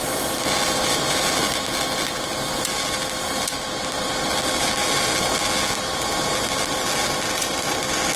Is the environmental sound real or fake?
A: real